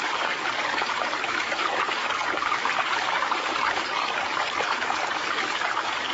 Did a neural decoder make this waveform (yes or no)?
yes